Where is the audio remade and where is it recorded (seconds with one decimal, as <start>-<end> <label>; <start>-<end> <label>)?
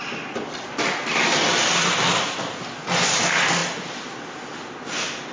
0.0-5.3 recorded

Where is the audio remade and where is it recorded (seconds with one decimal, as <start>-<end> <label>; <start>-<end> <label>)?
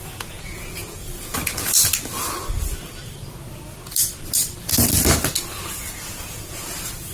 0.0-1.4 remade; 1.4-5.7 recorded; 5.7-7.1 remade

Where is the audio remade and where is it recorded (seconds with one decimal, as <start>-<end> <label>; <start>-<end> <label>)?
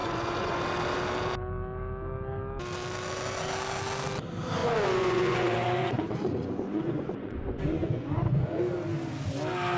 0.0-0.6 remade; 0.6-4.6 recorded; 4.6-8.6 remade; 8.6-9.8 recorded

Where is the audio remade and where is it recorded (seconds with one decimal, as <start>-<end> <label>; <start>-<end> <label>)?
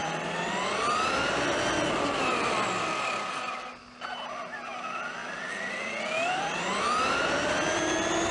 0.0-8.3 recorded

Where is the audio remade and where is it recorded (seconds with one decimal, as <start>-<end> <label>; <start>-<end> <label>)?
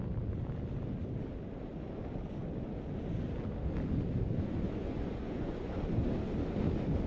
0.0-4.8 recorded; 4.8-5.8 remade; 5.8-7.1 recorded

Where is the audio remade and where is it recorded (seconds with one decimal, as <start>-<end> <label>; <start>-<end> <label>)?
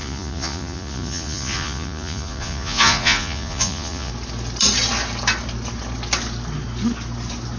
0.0-4.1 remade; 4.1-7.6 recorded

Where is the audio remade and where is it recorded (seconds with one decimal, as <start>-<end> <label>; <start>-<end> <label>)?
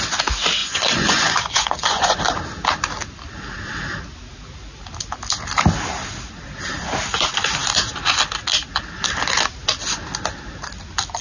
0.0-0.6 recorded; 0.6-2.2 remade; 2.2-11.2 recorded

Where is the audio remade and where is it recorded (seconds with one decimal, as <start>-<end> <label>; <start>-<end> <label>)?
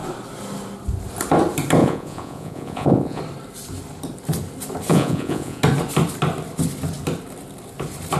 0.0-1.8 recorded; 1.8-3.2 remade; 3.2-4.9 recorded; 4.9-5.6 remade; 5.6-8.2 recorded